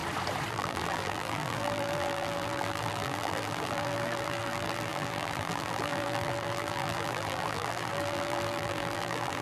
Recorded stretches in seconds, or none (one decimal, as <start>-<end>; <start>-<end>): 0.0-0.5